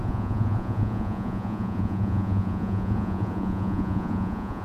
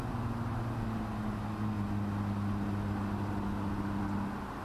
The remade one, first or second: first